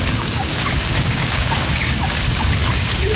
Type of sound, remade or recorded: remade